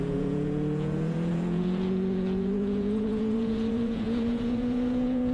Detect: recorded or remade remade